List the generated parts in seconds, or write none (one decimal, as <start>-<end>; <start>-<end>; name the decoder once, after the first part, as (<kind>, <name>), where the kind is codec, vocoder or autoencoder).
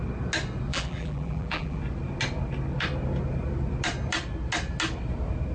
0.7-1.8 (vocoder, BigVGAN v2)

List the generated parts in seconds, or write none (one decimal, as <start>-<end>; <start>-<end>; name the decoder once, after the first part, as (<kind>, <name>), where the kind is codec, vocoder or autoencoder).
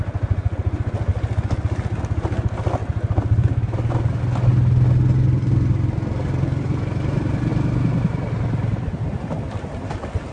2.8-4.2 (vocoder, BigVGAN v2)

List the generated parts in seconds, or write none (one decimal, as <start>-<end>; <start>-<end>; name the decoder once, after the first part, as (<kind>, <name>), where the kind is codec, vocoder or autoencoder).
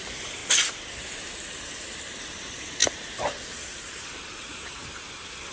0.0-0.4 (vocoder, BigVGAN v2); 2.2-2.8; 3.5-5.5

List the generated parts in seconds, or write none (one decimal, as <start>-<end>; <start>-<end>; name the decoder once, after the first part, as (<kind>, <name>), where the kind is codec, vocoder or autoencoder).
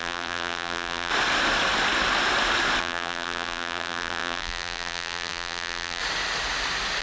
0.0-1.1 (vocoder, BigVGAN v2); 2.8-6.0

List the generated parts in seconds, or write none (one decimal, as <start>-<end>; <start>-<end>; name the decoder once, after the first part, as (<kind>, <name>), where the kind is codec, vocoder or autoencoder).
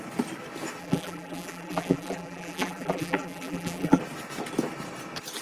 0.8-4.0 (vocoder, BigVGAN v2)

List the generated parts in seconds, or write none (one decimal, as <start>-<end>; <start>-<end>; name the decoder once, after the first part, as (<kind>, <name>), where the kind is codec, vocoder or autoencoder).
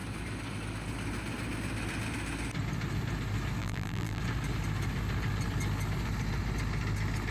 3.6-4.2 (vocoder, BigVGAN v2)